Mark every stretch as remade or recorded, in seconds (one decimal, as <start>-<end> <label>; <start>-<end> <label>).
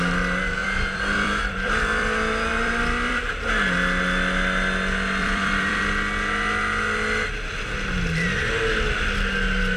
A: 0.0-0.6 recorded; 0.6-3.1 remade; 3.1-5.2 recorded; 5.2-5.8 remade; 5.8-9.8 recorded